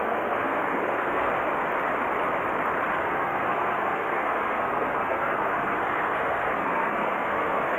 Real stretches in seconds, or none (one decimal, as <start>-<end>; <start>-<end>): 1.3-3.0